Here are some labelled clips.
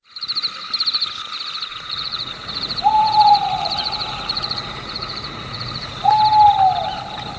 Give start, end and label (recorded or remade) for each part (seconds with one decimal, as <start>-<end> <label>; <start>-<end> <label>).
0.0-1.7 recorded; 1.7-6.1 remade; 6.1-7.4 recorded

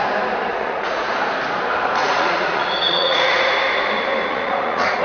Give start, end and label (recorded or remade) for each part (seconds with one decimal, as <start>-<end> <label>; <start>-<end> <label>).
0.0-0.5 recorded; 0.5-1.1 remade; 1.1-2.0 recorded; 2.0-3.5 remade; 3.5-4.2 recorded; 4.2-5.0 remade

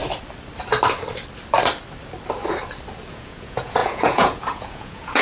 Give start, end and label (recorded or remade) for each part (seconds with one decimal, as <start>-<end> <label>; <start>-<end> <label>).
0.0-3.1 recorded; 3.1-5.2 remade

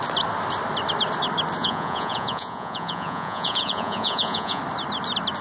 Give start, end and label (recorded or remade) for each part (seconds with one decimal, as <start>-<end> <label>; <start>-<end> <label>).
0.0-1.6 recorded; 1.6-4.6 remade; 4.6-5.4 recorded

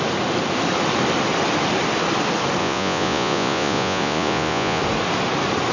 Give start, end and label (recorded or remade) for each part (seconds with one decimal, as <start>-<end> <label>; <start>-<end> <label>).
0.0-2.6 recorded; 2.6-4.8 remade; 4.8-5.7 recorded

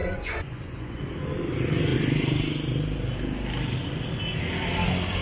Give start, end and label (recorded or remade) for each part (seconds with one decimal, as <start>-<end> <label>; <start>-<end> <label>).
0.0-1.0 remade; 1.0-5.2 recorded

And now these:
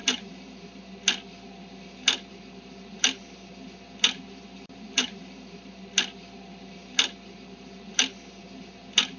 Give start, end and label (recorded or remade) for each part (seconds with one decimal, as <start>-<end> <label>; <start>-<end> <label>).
0.0-9.2 recorded